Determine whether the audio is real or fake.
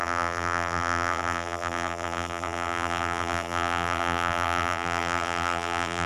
fake